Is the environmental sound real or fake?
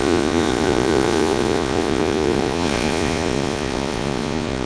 fake